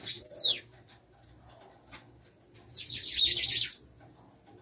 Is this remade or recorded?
recorded